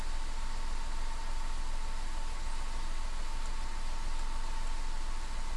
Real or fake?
real